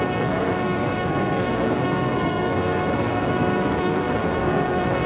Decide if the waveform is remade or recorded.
remade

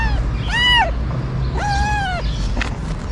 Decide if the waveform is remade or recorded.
recorded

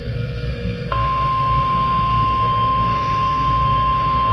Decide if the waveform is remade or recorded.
remade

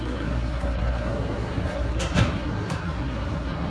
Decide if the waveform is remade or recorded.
remade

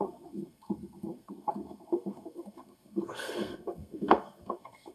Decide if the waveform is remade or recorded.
remade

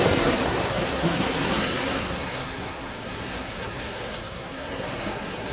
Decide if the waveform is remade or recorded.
remade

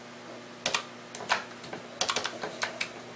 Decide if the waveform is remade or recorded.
recorded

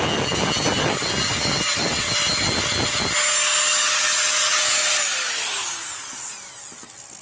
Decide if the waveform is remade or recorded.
recorded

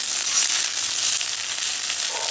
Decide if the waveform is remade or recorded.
recorded